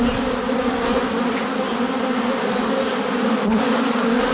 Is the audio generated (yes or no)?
no